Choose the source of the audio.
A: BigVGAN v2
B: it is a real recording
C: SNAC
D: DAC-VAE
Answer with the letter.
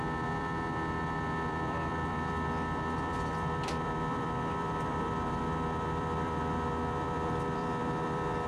A